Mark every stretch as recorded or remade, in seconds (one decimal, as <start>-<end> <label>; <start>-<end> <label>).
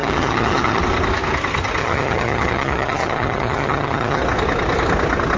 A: 0.0-0.8 remade; 0.8-1.8 recorded; 1.8-4.2 remade; 4.2-5.4 recorded